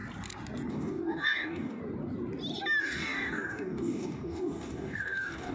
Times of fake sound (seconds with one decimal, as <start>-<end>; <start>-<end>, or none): 0.7-1.8; 2.8-5.5